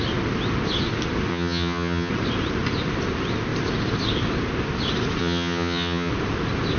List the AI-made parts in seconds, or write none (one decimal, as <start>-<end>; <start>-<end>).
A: 1.3-2.1; 5.2-6.1